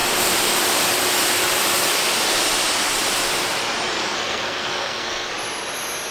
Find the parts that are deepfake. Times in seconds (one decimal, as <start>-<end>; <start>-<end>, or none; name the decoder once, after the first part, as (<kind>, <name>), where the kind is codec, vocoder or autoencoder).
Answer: 4.0-5.3 (codec, SNAC)